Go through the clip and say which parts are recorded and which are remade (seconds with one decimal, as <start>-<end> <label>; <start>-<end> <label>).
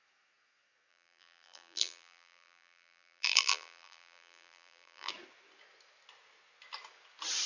0.0-0.9 recorded; 0.9-5.1 remade; 5.1-7.5 recorded